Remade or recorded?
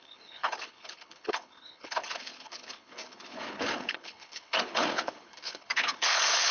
remade